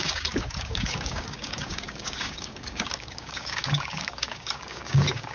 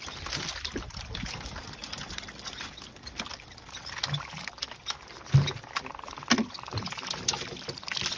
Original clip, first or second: second